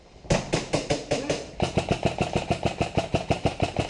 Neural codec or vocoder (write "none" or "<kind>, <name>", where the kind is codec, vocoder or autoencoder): vocoder, BigVGAN v2